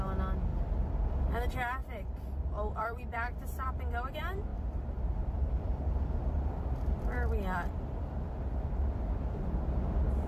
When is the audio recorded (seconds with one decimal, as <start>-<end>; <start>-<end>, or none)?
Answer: 0.0-0.5; 1.2-1.8; 4.1-4.5; 9.2-10.3